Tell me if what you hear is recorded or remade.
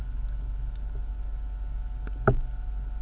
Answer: recorded